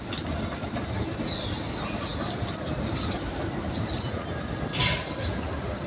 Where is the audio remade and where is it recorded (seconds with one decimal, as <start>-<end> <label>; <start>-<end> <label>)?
0.0-5.9 recorded